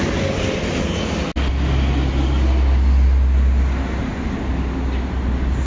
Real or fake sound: real